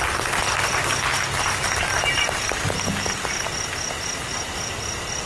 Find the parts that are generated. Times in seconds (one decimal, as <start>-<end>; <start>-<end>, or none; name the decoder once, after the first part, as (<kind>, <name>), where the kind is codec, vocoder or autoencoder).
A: none